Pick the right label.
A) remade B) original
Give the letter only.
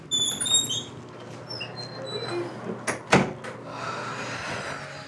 B